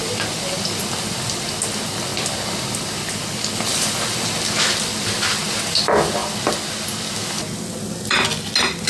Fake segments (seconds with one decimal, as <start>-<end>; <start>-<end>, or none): none